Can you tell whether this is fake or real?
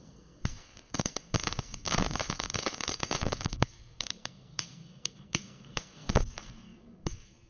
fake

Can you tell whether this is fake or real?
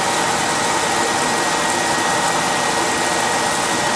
real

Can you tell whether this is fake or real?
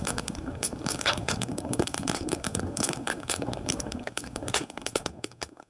fake